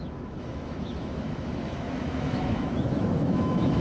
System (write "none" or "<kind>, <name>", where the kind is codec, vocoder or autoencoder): autoencoder, DAC-VAE